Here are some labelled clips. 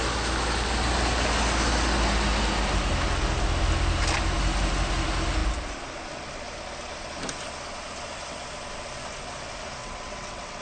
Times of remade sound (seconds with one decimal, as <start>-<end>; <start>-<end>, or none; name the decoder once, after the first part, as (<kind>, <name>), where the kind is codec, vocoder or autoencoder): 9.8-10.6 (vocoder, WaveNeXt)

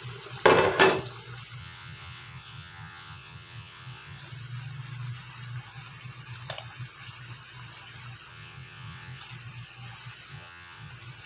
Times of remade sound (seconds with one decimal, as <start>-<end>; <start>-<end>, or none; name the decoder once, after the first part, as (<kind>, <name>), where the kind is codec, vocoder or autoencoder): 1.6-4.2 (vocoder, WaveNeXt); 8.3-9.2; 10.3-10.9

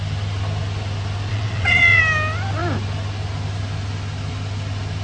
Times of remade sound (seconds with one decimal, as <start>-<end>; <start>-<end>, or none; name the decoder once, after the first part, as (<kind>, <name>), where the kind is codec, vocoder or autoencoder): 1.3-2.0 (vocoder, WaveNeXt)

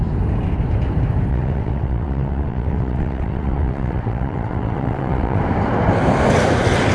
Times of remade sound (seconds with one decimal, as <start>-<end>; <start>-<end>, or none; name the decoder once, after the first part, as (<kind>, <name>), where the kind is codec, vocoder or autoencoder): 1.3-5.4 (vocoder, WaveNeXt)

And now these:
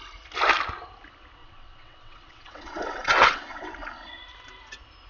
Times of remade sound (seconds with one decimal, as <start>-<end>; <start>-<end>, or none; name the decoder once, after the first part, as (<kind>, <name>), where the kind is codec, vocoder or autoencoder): 1.4-3.7 (vocoder, WaveNeXt)